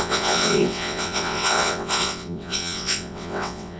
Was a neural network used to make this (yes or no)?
yes